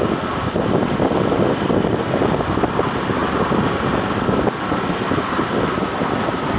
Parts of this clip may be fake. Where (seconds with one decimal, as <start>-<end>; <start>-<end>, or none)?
none